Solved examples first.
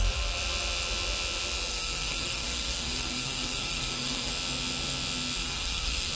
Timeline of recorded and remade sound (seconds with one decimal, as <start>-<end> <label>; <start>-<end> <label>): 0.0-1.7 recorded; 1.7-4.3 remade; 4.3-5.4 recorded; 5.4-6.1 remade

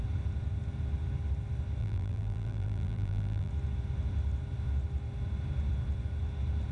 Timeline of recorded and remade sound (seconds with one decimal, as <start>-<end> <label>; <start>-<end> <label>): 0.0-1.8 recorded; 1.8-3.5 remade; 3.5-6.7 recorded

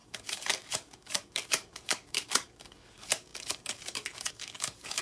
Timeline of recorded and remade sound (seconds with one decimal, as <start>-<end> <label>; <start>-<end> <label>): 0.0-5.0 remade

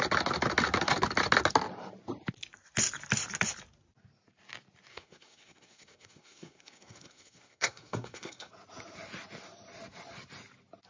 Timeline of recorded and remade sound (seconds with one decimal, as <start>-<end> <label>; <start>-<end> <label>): 0.0-4.9 recorded; 4.9-8.5 remade; 8.5-10.9 recorded

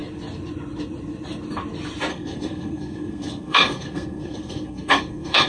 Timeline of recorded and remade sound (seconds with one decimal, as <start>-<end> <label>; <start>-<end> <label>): 0.0-2.1 recorded; 2.1-5.5 remade

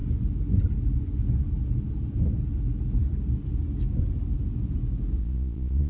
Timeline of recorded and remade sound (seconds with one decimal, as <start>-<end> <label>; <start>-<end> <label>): 0.0-5.2 recorded; 5.2-5.9 remade

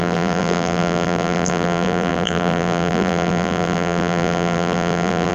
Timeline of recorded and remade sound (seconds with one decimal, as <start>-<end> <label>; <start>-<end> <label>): 0.0-5.3 remade

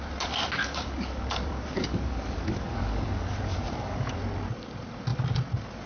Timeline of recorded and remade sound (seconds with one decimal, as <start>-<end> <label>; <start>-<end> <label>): 0.0-0.6 recorded; 0.6-4.1 remade; 4.1-5.9 recorded